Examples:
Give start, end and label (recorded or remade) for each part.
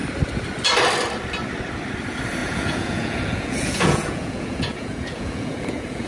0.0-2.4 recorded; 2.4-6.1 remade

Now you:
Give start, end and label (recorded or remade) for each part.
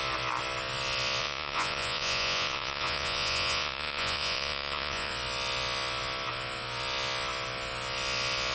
0.0-1.2 recorded; 1.2-5.1 remade; 5.1-8.5 recorded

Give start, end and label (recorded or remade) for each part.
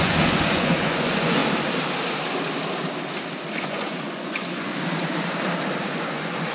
0.0-1.4 remade; 1.4-3.6 recorded; 3.6-4.7 remade; 4.7-5.8 recorded; 5.8-6.5 remade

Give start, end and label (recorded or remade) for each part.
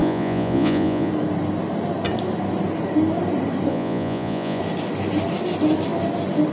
0.0-1.1 remade; 1.1-3.7 recorded; 3.7-4.6 remade; 4.6-6.5 recorded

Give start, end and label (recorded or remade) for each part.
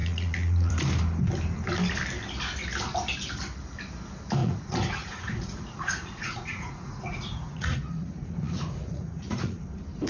0.0-0.7 remade; 0.7-4.4 recorded; 4.4-9.6 remade; 9.6-10.1 recorded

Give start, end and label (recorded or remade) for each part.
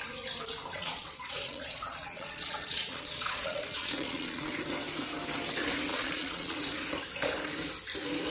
0.0-0.8 recorded; 0.8-4.5 remade; 4.5-5.9 recorded; 5.9-6.6 remade; 6.6-8.3 recorded